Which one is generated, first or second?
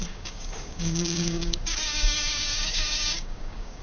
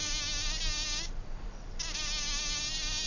first